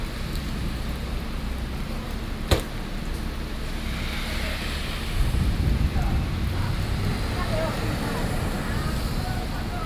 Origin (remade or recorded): recorded